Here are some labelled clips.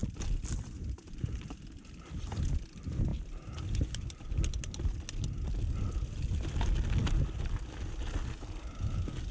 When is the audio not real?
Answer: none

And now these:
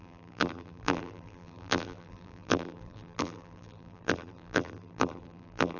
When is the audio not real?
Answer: 0.0-5.8 (vocoder, BigVGAN v2)

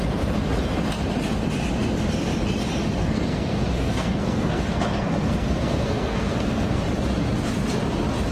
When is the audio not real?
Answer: 3.0-6.8 (codec, SNAC)

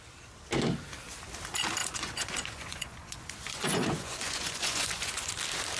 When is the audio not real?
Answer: 1.8-5.3 (vocoder, Vocos)

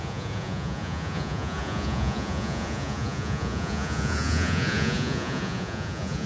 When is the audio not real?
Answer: 0.0-6.3 (vocoder, Vocos)

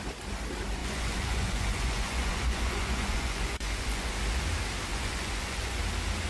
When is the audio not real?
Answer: 0.8-4.1 (vocoder, Vocos); 4.9-5.8

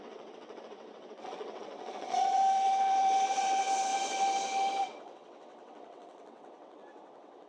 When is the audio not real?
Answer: 0.0-3.9 (vocoder, WaveNeXt); 4.8-7.5

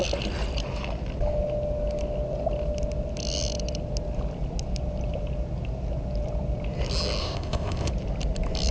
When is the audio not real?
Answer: 7.2-7.9 (codec, ZipCodec)